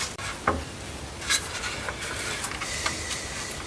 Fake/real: fake